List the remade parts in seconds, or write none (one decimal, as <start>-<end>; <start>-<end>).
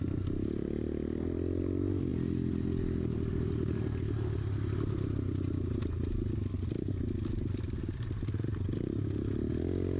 none